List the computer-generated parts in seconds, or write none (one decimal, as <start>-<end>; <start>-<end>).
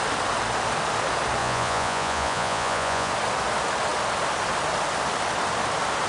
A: 1.4-3.1